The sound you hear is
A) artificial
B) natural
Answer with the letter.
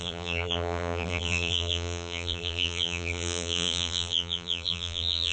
A